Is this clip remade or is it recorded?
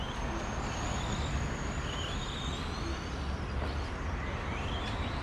recorded